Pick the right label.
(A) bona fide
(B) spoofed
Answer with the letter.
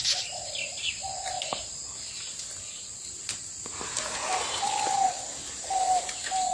A